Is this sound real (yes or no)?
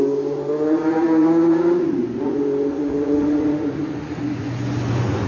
no